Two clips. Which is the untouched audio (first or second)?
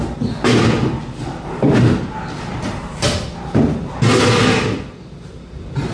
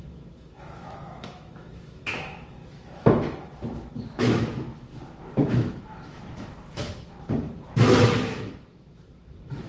first